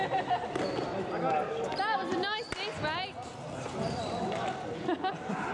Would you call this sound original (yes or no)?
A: yes